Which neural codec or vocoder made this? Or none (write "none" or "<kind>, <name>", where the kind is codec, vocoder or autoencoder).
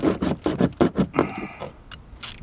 none